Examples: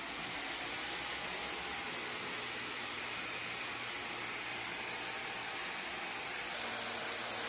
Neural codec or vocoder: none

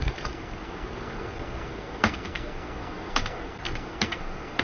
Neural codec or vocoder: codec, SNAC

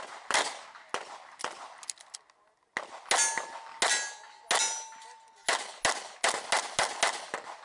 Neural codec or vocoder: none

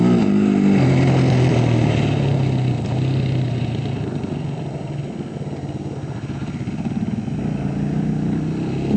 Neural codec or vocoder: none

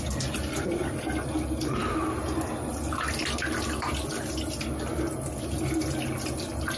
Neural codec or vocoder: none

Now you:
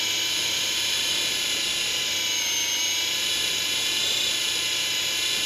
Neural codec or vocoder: none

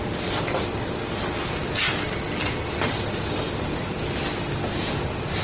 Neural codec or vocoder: none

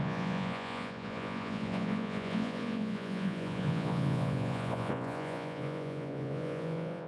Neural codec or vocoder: vocoder, Vocos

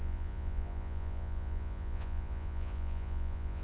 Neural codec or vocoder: vocoder, Vocos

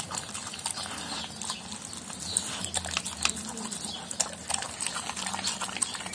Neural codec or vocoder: none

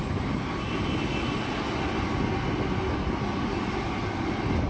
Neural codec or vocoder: none